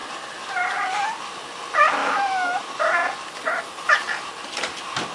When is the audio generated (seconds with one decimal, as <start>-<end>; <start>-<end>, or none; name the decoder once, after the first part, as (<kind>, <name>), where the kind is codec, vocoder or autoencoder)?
2.0-2.6 (autoencoder, DAC-VAE)